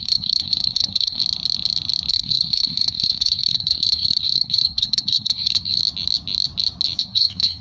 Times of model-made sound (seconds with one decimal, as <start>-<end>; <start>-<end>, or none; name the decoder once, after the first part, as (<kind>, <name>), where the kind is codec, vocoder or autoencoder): 0.0-1.2 (codec, SNAC); 2.1-5.8; 7.0-7.6